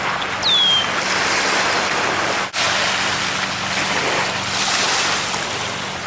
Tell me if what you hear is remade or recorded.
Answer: recorded